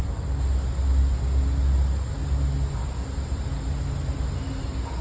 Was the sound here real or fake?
real